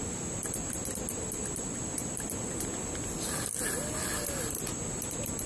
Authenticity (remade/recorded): recorded